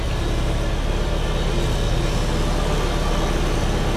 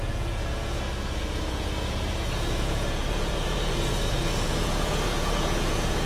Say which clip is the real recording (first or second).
first